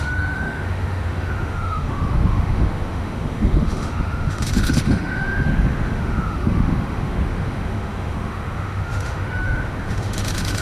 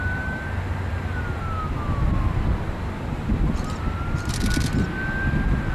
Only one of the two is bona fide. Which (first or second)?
second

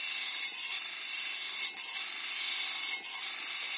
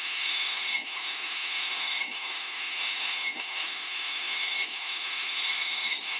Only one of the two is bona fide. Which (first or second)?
first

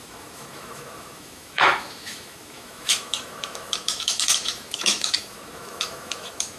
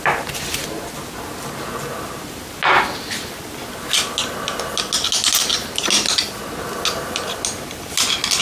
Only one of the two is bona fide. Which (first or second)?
second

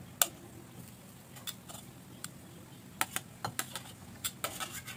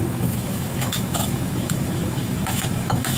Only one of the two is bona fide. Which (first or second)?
first